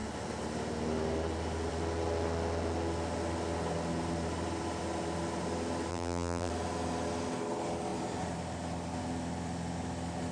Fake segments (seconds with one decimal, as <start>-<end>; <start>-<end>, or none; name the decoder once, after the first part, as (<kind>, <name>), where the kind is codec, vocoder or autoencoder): 5.9-6.5 (vocoder, BigVGAN v2)